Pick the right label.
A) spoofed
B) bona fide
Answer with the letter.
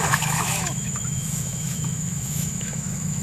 A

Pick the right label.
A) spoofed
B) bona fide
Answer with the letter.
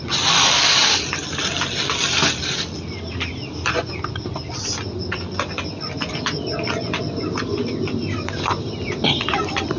B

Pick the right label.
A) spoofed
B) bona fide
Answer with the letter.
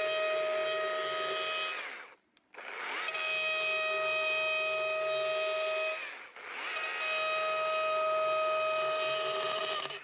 B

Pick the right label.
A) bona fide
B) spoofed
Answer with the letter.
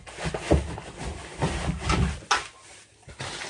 A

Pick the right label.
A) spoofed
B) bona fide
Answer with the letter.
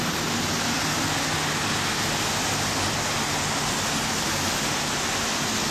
B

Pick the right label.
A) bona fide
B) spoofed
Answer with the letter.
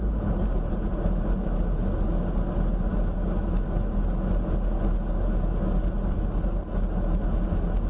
A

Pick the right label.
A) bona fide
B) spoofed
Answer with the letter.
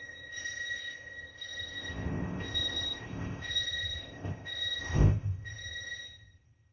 B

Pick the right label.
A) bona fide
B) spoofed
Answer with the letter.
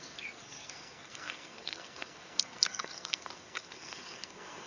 B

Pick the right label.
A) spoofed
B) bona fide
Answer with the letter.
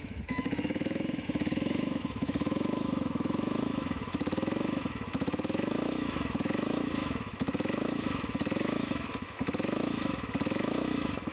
A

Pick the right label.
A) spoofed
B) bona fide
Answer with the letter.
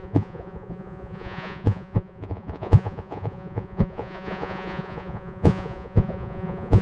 A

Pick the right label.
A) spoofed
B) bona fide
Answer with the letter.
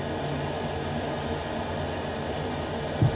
B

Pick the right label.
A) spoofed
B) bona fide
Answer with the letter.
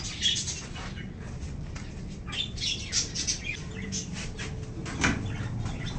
B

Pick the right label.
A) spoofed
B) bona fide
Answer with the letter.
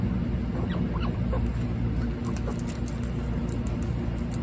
B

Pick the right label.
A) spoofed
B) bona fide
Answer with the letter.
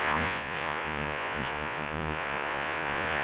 A